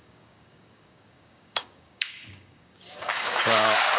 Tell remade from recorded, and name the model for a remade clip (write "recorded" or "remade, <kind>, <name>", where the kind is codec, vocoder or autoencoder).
remade, codec, DAC